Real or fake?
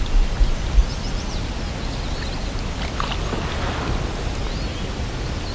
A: real